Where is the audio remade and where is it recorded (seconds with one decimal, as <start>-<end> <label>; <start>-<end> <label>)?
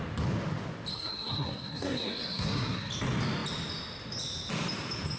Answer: 0.0-0.9 recorded; 0.9-2.9 remade; 2.9-5.2 recorded